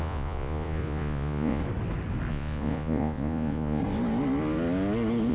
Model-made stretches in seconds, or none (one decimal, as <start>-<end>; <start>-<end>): 0.0-1.6; 2.3-3.8